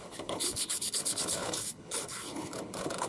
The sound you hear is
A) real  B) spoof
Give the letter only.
B